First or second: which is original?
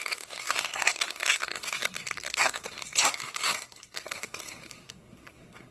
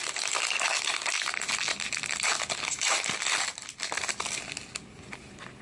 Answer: second